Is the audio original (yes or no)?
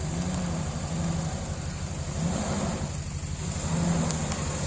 yes